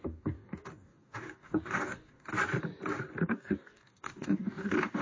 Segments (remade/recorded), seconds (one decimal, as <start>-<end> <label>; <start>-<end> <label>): 0.0-2.3 remade; 2.3-3.2 recorded; 3.2-5.0 remade